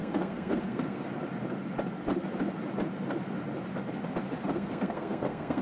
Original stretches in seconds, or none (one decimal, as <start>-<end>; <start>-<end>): 1.1-4.5